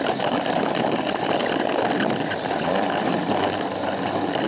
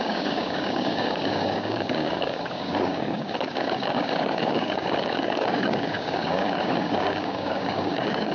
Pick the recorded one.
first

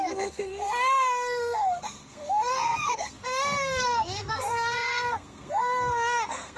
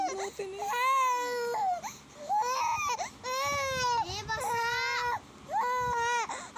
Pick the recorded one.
second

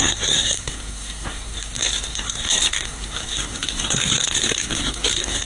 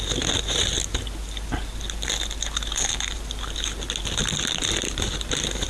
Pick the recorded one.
second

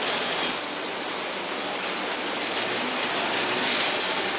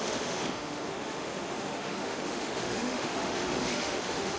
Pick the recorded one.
first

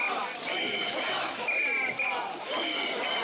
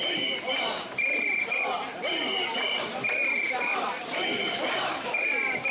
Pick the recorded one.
first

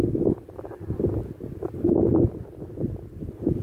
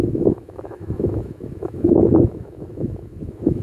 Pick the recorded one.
first